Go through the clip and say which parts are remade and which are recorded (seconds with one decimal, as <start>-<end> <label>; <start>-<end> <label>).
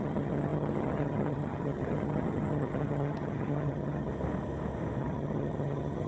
0.0-4.1 remade; 4.1-5.0 recorded; 5.0-6.1 remade